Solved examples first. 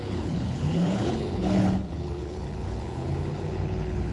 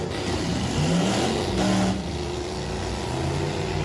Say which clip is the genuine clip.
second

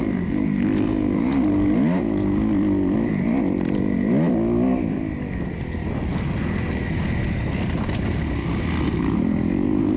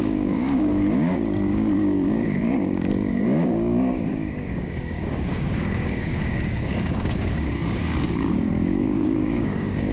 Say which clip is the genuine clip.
first